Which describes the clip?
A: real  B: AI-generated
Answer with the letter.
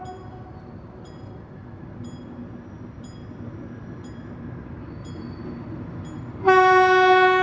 A